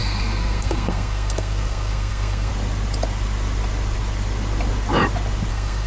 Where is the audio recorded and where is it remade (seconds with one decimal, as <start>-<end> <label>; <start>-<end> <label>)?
0.0-2.5 remade; 2.5-5.5 recorded; 5.5-5.9 remade